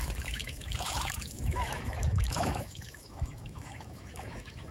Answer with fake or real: fake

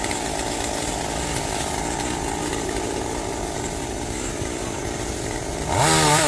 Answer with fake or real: real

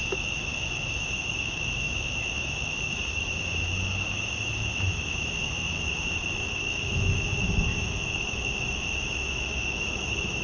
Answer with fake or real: fake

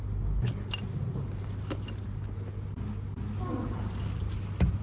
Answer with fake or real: real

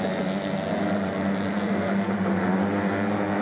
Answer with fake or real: real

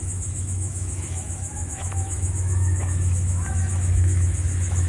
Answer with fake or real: fake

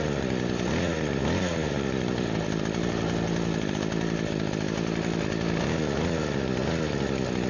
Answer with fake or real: real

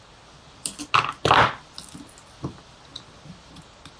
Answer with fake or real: real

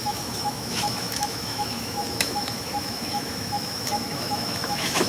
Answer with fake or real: fake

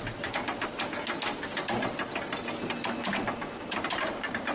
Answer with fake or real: real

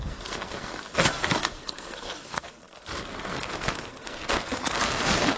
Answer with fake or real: fake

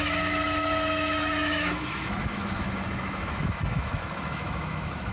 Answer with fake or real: fake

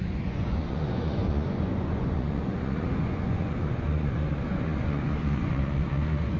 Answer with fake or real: fake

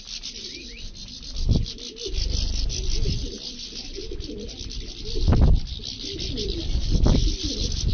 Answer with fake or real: fake